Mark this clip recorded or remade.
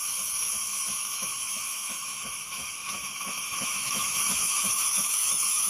remade